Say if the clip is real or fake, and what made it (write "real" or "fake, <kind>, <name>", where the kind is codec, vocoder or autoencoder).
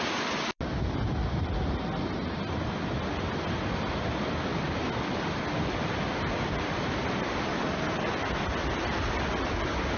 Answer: real